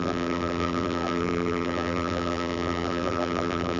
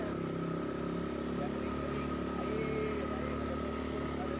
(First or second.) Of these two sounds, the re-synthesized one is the first